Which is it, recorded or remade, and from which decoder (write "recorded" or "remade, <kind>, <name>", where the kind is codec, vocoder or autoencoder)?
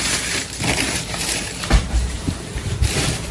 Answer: remade, vocoder, BigVGAN v2